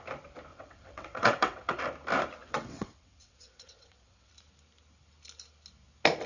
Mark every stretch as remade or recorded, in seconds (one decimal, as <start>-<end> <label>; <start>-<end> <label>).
0.0-0.5 recorded; 0.5-1.8 remade; 1.8-2.4 recorded; 2.4-4.3 remade; 4.3-6.3 recorded